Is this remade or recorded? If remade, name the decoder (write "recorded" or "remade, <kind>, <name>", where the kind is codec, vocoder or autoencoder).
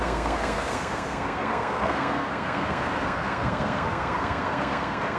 remade, codec, SNAC